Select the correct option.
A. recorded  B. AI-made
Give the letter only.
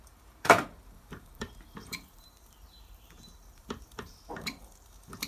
B